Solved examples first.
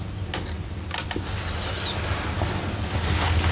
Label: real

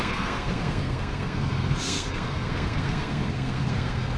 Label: fake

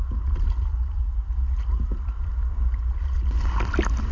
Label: real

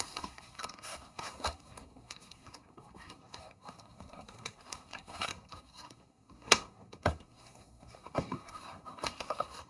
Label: fake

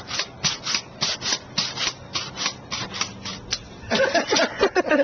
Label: real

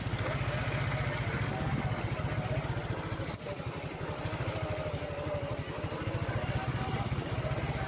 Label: real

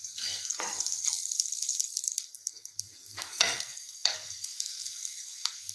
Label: fake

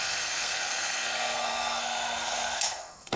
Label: fake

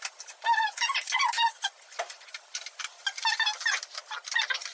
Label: real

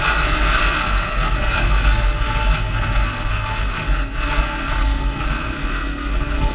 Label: fake